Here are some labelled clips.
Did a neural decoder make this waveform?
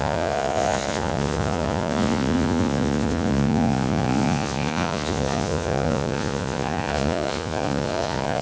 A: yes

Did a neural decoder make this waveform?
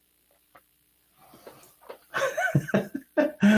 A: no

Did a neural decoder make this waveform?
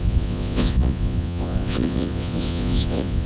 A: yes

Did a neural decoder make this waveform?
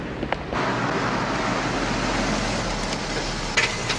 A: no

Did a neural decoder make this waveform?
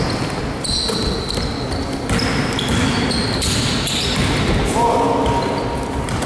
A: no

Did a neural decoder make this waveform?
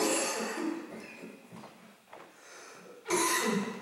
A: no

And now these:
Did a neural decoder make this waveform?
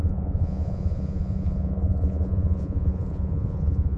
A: yes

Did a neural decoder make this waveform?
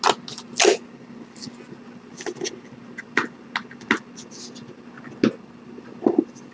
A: no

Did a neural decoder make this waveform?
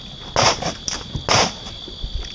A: no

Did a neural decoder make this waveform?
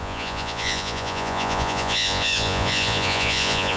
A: yes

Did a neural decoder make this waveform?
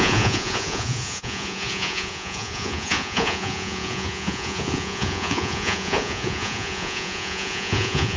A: yes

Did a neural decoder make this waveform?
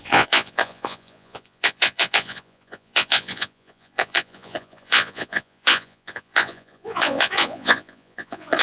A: yes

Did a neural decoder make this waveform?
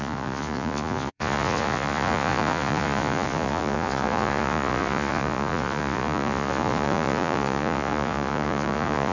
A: yes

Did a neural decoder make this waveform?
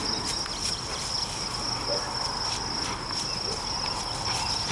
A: no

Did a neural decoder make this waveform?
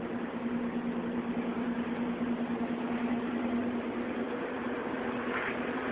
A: no